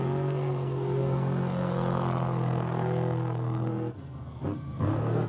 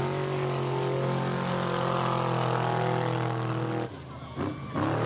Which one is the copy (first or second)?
first